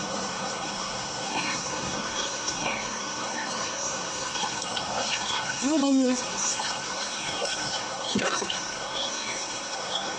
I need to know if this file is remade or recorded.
remade